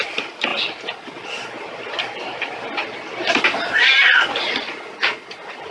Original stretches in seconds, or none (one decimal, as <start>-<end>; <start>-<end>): 0.0-5.7